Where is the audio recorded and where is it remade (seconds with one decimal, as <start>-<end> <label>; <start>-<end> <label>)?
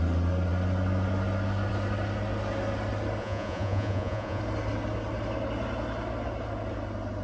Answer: 0.0-3.2 recorded; 3.2-4.4 remade; 4.4-7.2 recorded